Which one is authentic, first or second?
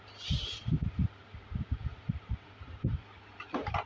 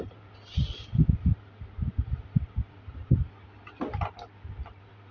second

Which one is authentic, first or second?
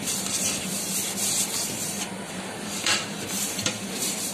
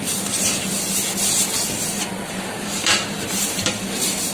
second